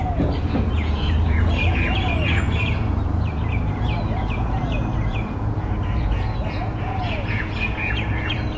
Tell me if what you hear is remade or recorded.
remade